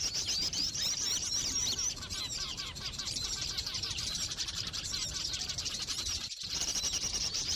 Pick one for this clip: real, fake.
fake